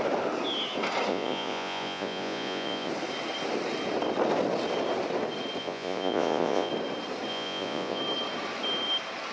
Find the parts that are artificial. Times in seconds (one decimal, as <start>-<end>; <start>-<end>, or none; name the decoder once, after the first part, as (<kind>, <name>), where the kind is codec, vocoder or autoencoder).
1.1-2.9 (vocoder, Vocos); 5.6-6.7; 7.3-8.0